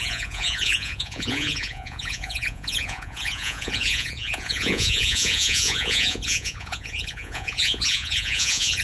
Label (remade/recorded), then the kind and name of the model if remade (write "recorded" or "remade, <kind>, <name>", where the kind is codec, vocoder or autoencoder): remade, vocoder, Vocos